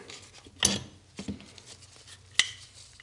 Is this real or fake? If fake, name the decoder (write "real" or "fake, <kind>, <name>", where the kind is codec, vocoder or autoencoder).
real